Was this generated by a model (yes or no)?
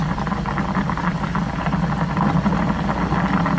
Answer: no